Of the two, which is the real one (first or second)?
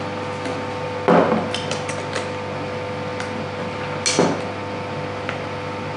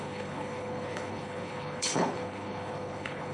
first